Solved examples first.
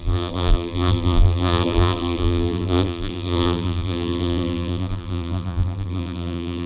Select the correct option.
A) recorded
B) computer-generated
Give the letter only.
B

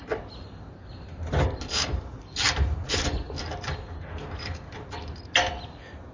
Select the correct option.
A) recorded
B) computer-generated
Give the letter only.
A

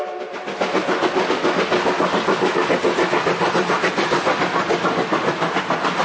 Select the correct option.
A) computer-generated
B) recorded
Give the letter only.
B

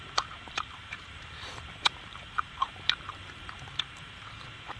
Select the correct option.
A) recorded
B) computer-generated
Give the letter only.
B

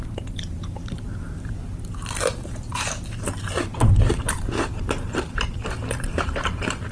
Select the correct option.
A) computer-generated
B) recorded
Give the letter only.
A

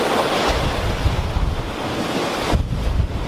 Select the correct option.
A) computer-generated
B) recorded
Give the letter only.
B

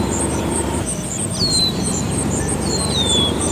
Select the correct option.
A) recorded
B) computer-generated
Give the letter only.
B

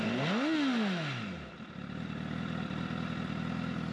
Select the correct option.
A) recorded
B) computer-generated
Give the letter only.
A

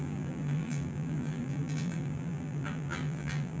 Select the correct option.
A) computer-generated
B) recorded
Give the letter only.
A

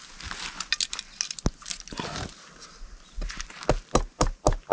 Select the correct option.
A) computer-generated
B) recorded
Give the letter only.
B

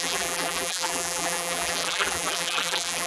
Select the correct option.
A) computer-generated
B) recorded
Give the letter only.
A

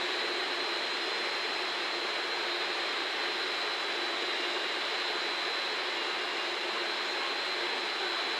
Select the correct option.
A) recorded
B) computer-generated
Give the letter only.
A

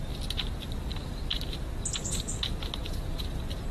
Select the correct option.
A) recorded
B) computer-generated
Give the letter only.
A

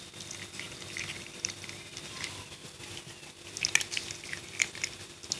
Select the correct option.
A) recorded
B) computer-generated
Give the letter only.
A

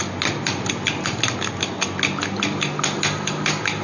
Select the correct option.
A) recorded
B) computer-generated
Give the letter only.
A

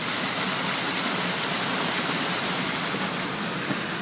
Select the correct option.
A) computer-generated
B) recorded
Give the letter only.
B